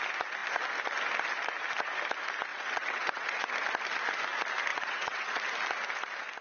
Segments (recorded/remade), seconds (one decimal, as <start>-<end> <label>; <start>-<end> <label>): 0.0-2.5 recorded; 2.5-3.5 remade; 3.5-4.7 recorded; 4.7-5.3 remade; 5.3-6.4 recorded